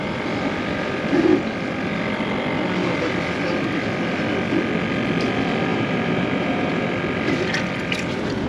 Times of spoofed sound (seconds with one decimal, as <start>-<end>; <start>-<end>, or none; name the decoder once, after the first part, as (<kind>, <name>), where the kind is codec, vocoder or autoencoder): 5.7-6.9 (vocoder, BigVGAN v2)